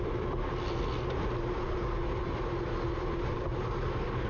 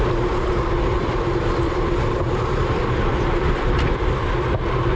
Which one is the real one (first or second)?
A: first